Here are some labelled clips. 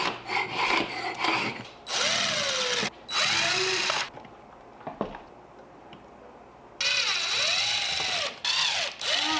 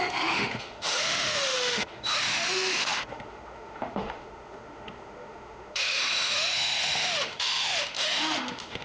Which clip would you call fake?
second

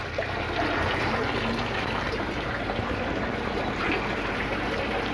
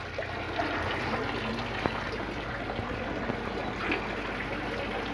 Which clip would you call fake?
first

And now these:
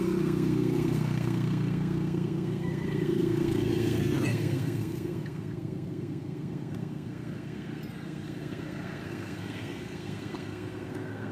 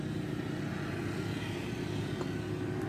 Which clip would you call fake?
first